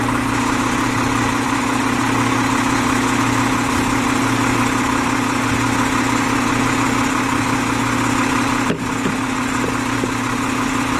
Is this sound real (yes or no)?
yes